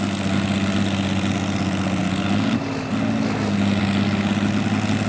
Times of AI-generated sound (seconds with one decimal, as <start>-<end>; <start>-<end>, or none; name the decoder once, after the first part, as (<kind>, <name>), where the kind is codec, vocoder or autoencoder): none